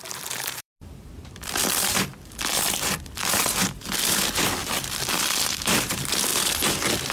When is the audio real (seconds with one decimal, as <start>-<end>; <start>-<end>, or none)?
none